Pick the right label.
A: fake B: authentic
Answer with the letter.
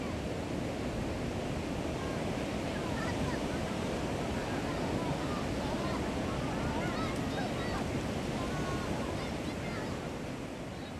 B